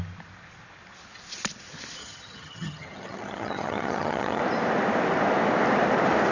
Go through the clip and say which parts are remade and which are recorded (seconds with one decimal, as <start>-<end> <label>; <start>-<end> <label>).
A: 0.0-2.0 recorded; 2.0-4.4 remade; 4.4-6.3 recorded